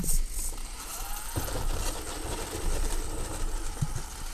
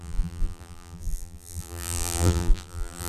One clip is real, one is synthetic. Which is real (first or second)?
first